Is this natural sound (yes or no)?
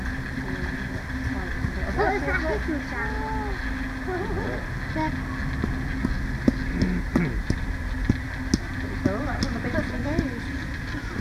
yes